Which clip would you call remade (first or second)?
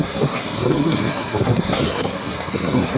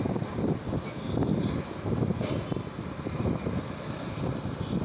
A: first